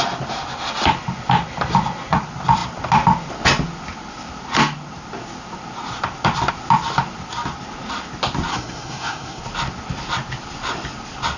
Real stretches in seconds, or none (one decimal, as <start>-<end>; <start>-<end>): 0.0-8.5; 9.4-11.4